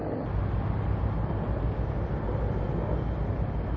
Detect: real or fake real